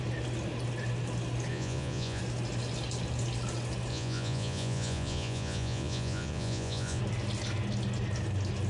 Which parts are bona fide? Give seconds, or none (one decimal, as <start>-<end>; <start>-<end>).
0.0-1.5; 2.2-3.9; 7.0-8.7